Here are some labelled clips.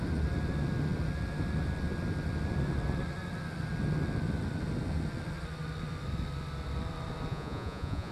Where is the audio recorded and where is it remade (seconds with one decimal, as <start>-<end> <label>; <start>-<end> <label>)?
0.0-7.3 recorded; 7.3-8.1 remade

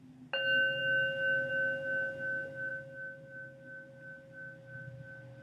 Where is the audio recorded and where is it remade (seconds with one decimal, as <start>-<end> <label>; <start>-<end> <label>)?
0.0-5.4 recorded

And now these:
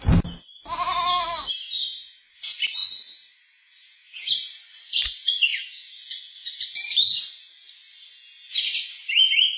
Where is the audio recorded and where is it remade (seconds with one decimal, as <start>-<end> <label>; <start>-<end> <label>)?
0.0-5.5 recorded; 5.5-7.2 remade; 7.2-9.6 recorded

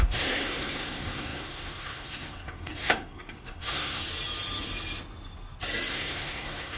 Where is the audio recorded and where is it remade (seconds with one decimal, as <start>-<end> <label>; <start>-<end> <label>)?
0.0-4.0 remade; 4.0-5.9 recorded; 5.9-6.8 remade

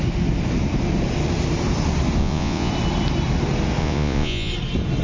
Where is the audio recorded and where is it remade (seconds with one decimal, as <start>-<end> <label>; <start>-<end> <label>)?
0.0-2.2 recorded; 2.2-2.7 remade; 2.7-3.8 recorded; 3.8-4.5 remade; 4.5-5.0 recorded